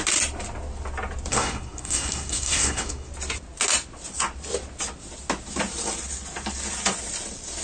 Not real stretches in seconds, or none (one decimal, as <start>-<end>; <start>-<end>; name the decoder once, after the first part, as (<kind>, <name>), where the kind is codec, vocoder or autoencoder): 1.3-3.1 (codec, SNAC)

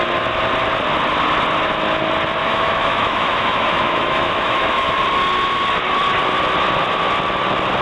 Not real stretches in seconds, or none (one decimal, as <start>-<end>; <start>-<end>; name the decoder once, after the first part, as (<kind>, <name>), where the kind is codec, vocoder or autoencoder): 2.4-5.0 (autoencoder, DAC-VAE)

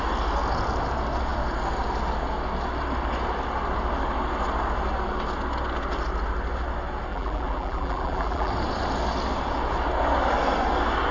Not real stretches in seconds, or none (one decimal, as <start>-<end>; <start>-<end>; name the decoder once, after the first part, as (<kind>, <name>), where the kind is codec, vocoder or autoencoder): 7.1-8.5 (vocoder, BigVGAN v2)

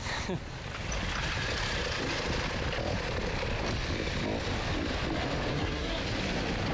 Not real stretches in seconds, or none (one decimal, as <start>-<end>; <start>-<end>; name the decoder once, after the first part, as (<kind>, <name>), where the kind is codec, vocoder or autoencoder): 5.5-6.0 (codec, SNAC)

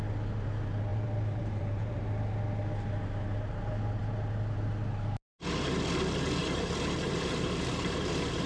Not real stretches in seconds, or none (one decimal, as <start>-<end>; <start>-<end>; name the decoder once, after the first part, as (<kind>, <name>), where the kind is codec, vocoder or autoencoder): 0.9-2.2 (vocoder, BigVGAN v2); 6.4-8.5

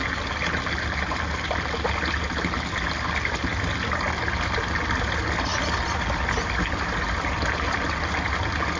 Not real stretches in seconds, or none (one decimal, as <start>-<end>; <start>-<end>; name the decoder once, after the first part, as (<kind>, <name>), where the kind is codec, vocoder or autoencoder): none